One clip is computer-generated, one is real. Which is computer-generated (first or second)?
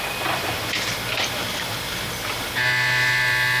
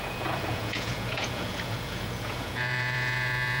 second